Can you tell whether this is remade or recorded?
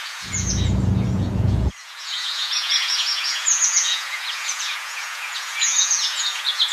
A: remade